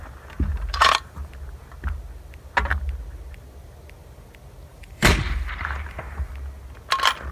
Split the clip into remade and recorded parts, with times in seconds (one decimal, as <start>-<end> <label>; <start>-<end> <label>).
0.0-0.5 recorded; 0.5-1.3 remade; 1.3-4.7 recorded; 4.7-6.3 remade; 6.3-7.3 recorded